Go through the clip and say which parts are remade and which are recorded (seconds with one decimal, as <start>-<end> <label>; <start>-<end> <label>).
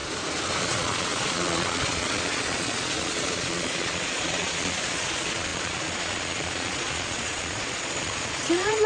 0.0-0.6 recorded; 0.6-8.9 remade